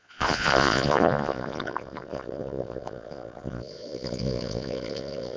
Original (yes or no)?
no